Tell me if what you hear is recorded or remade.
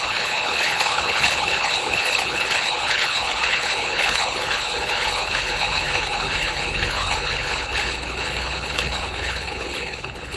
remade